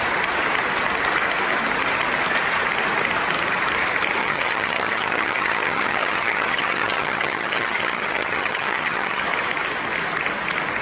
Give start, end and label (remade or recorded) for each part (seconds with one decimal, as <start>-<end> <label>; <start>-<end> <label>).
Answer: 0.0-4.2 recorded; 4.2-9.2 remade; 9.2-10.8 recorded